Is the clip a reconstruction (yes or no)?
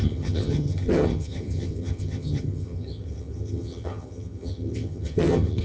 yes